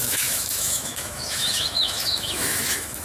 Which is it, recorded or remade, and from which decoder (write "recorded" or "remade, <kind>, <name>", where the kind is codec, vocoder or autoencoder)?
remade, autoencoder, DAC-VAE